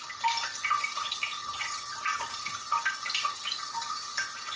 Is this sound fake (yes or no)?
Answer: no